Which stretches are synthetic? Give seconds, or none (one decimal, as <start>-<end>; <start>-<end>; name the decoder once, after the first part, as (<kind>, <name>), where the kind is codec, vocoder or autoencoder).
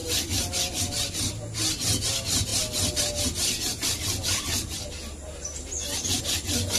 none